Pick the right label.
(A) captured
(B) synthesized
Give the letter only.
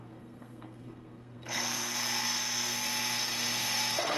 B